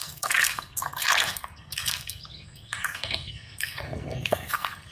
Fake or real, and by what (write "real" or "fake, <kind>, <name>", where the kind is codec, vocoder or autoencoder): fake, codec, SNAC